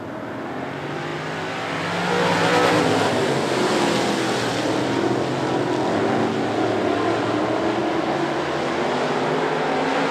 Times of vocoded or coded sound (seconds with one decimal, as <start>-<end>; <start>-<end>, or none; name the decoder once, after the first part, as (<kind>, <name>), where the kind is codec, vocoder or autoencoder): none